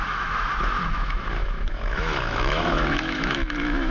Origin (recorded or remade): remade